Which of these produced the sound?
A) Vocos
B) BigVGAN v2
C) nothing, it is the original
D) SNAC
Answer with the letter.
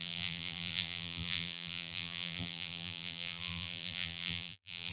B